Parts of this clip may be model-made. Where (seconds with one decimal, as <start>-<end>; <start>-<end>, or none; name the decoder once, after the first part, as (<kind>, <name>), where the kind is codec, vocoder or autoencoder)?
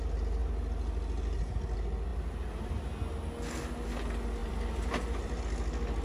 4.4-5.4 (vocoder, BigVGAN v2)